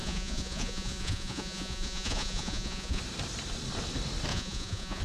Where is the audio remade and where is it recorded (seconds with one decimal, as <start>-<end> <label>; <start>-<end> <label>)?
0.0-3.0 remade; 3.0-4.3 recorded; 4.3-5.0 remade